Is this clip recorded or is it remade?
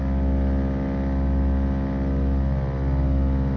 recorded